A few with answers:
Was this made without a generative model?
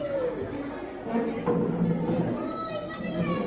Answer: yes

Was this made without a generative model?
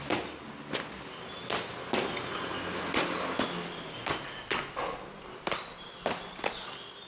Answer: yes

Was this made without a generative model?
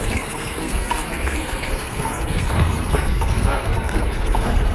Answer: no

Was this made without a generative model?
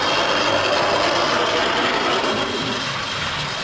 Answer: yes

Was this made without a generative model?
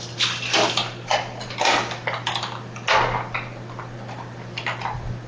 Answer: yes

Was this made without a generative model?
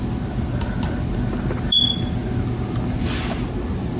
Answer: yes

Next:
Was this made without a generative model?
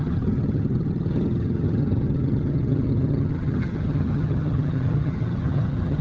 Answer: no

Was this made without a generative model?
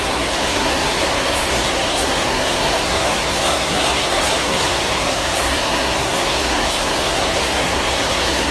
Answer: no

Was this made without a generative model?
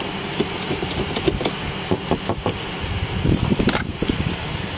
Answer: yes